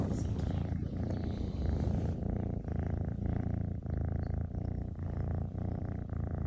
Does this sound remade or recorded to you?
remade